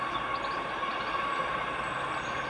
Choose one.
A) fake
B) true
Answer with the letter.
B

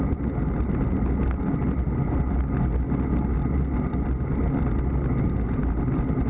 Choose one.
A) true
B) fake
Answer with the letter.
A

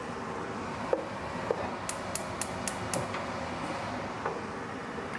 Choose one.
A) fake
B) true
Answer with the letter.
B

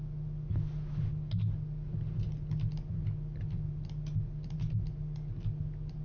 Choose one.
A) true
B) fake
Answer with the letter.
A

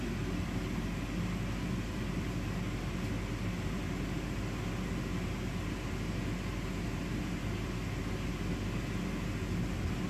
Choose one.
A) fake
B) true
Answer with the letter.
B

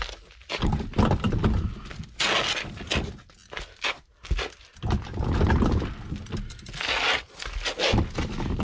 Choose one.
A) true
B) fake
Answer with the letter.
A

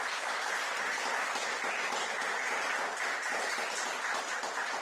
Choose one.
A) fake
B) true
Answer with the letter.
B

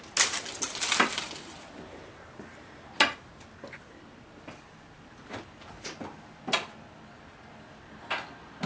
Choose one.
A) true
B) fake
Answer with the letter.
A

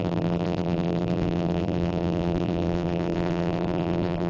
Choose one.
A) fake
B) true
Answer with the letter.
A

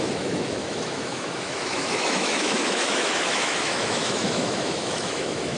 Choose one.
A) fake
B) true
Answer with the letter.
A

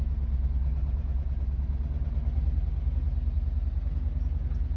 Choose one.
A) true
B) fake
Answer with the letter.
A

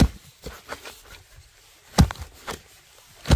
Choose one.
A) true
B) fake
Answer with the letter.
A